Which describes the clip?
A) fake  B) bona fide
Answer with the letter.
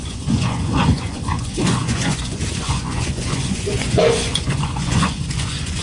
A